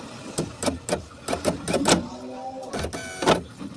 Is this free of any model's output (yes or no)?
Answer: yes